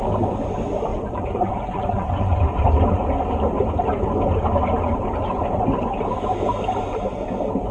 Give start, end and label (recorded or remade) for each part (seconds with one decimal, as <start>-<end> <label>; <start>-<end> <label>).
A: 0.0-0.9 recorded; 0.9-2.4 remade; 2.4-7.7 recorded